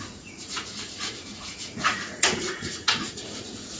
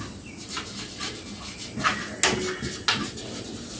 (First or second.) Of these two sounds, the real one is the second